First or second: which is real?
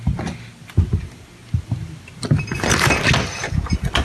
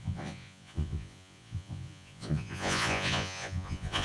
first